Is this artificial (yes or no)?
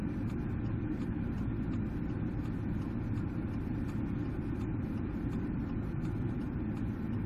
no